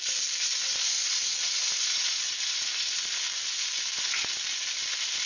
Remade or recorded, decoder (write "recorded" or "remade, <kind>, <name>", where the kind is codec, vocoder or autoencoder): recorded